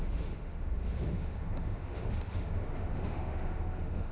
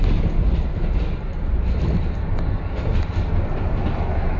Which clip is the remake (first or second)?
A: first